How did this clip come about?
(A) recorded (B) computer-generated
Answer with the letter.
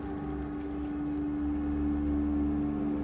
A